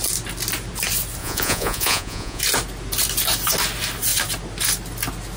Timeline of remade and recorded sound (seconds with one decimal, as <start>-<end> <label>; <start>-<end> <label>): 0.0-1.2 recorded; 1.2-2.4 remade; 2.4-5.4 recorded